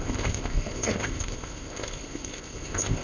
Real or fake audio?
fake